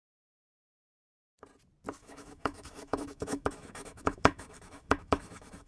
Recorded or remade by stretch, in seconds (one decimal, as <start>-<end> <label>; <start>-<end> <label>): 0.0-2.0 recorded; 2.0-5.7 remade